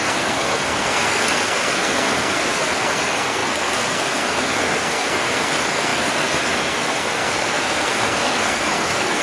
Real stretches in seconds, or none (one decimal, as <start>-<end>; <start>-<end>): none